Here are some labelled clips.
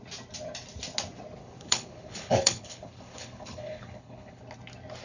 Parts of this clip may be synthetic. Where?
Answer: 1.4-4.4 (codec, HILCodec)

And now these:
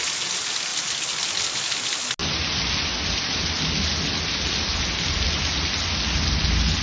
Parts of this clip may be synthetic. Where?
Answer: none